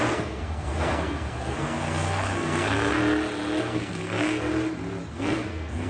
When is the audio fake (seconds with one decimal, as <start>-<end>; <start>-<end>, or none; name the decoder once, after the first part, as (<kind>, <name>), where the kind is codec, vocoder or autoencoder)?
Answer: 0.0-3.0 (codec, SNAC); 3.6-4.5; 5.1-5.9